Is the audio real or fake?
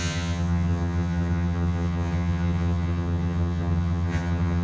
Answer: fake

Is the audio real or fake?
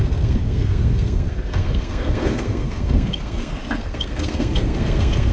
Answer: fake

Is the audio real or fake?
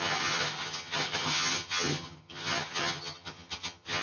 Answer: fake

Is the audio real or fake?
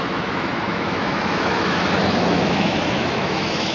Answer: fake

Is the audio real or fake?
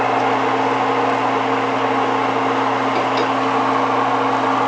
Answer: real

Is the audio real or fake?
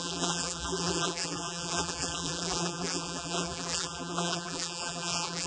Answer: fake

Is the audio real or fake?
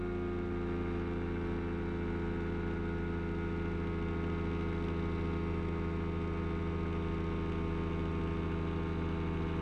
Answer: real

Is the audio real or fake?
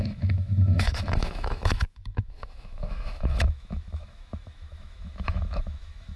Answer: fake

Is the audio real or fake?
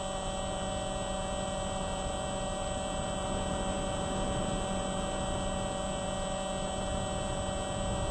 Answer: real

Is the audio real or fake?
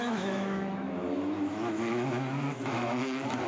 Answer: fake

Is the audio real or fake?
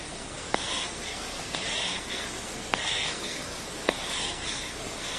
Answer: fake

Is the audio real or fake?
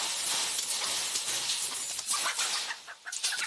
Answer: real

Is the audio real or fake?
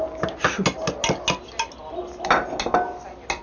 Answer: real